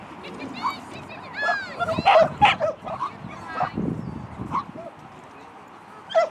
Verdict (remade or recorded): remade